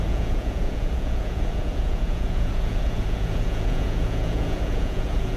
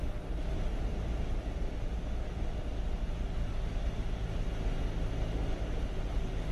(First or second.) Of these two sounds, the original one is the second